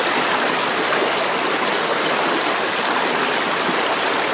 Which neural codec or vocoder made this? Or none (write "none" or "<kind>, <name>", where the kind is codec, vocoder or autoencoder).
none